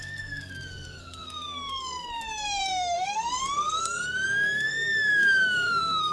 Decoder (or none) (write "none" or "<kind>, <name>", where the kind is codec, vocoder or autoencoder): codec, SNAC